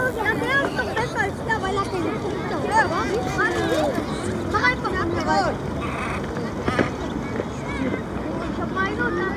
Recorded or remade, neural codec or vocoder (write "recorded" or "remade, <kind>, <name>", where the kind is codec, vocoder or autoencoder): recorded